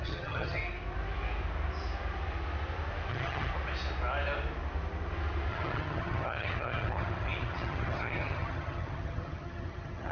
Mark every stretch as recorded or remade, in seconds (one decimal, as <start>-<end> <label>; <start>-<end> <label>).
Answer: 0.0-0.6 remade; 0.6-3.1 recorded; 3.1-3.5 remade; 3.5-5.5 recorded; 5.5-10.1 remade